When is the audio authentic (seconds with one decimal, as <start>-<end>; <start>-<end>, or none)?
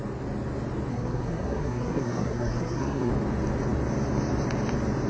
0.0-0.9; 3.1-5.1